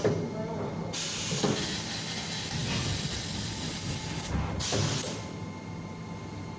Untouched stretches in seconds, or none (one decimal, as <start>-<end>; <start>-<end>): 0.0-6.6